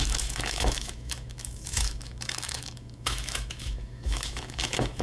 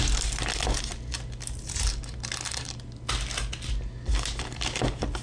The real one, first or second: second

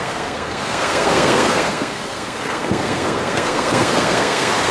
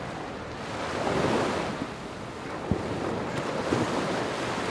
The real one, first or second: second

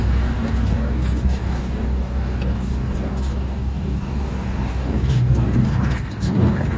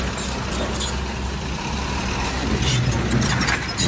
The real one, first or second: second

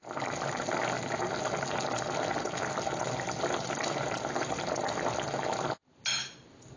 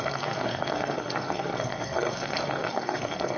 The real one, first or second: first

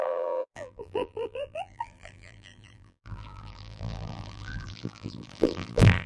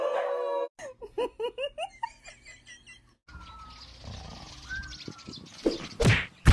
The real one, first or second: second